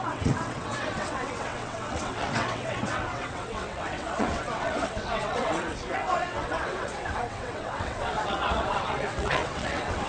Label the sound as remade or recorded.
remade